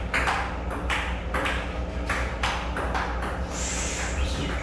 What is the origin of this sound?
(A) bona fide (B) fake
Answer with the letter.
A